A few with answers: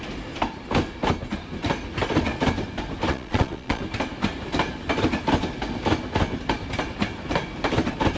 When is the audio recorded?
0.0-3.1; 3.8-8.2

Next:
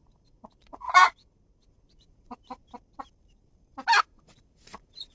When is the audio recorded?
2.6-4.0

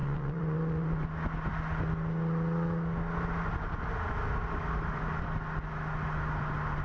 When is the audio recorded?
1.1-6.8

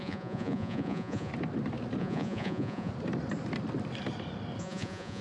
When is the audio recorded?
1.3-2.0; 2.9-4.6

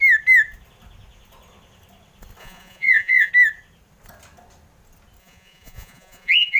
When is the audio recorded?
0.0-2.4; 3.3-5.2

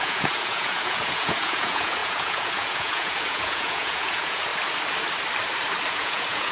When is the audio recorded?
4.5-5.9

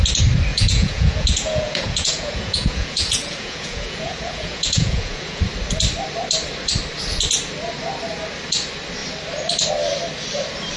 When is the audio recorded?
0.0-0.5; 5.4-10.8

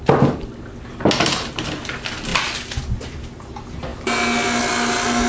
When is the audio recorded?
0.0-5.3